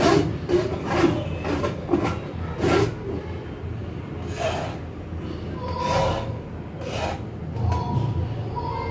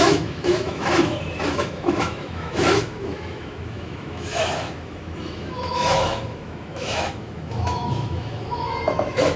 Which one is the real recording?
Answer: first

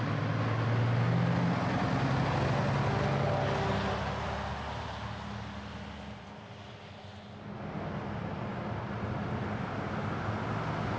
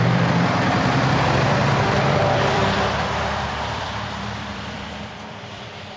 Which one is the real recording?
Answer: first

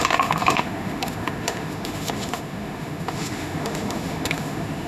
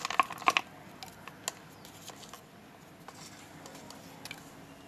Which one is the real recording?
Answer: second